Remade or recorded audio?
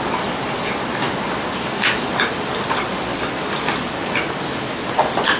recorded